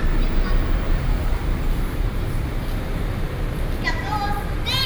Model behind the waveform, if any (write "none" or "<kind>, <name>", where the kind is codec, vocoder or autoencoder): vocoder, BigVGAN v2